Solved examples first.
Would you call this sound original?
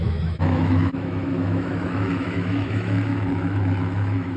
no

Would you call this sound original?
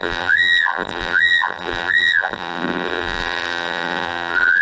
no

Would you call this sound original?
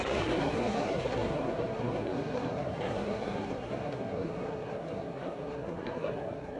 no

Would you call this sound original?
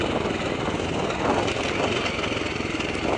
yes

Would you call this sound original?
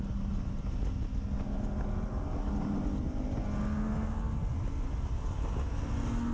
yes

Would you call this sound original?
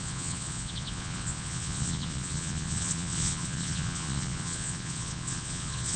no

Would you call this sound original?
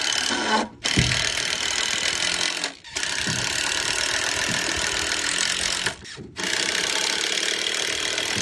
yes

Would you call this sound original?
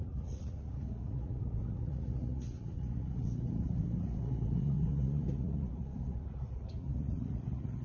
no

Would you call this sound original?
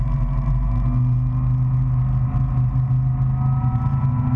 yes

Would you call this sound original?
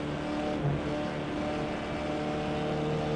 yes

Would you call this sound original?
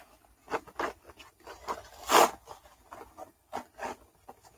yes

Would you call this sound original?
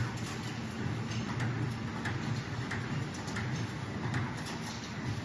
yes